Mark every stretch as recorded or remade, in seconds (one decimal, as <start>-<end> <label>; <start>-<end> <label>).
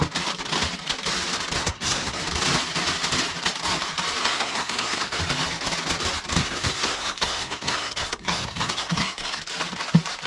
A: 0.0-1.6 recorded; 1.6-2.2 remade; 2.2-4.2 recorded; 4.2-5.2 remade; 5.2-6.4 recorded; 6.4-9.4 remade; 9.4-10.3 recorded